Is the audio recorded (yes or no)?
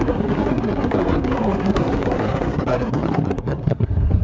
no